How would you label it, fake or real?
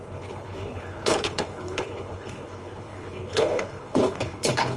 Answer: fake